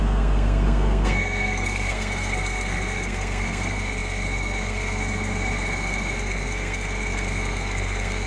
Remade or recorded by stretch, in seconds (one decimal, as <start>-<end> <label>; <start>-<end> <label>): 0.0-8.3 remade